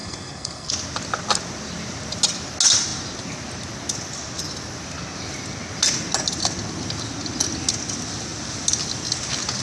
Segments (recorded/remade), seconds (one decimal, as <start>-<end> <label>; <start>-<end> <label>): 0.0-0.7 remade; 0.7-9.6 recorded